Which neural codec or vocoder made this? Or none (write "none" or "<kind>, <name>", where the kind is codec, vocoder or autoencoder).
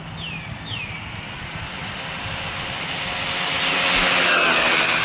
none